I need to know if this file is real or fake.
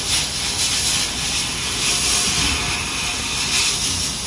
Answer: real